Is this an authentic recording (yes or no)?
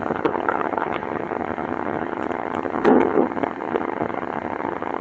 no